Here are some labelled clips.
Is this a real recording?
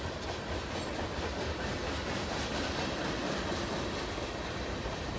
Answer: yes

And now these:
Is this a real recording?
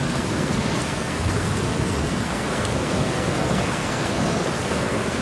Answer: no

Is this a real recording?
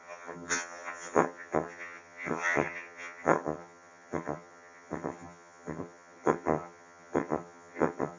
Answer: no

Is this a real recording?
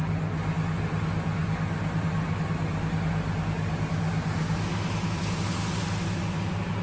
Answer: yes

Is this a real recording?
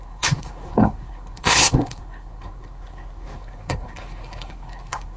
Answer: no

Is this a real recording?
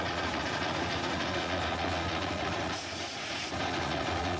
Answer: no